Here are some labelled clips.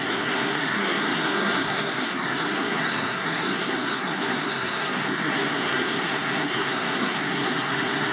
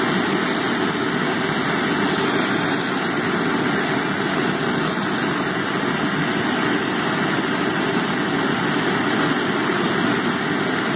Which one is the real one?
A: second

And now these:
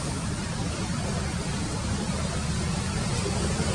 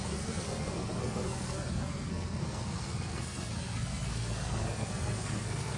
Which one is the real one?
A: first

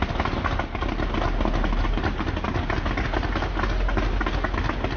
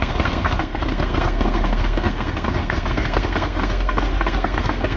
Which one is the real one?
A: first